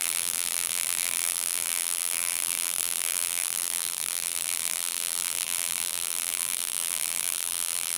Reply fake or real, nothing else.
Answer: fake